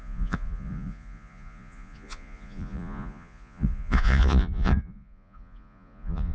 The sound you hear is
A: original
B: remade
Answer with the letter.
B